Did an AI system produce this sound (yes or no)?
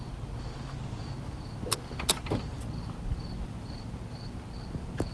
no